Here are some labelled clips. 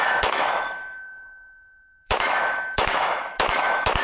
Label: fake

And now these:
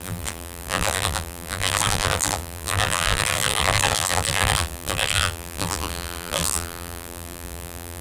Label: fake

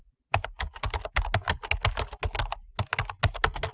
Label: real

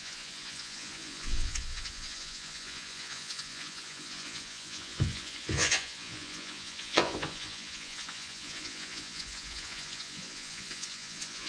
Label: fake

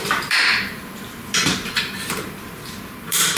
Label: fake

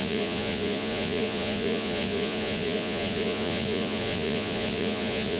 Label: fake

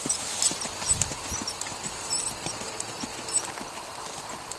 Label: real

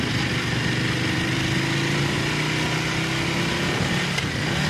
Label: real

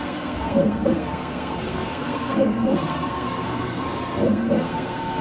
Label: fake